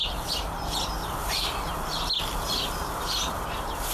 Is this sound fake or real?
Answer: fake